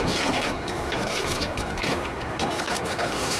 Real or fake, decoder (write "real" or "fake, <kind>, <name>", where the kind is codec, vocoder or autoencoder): fake, codec, SNAC